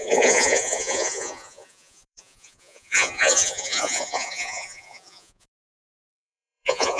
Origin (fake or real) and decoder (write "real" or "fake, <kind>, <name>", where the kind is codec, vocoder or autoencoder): fake, vocoder, Vocos